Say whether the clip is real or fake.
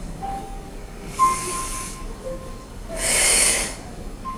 fake